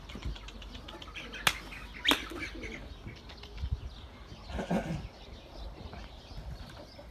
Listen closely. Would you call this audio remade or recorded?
recorded